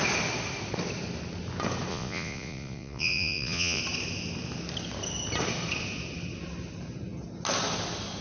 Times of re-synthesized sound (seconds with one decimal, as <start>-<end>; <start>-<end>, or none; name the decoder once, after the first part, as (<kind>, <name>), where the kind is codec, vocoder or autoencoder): 1.9-3.8 (vocoder, Vocos)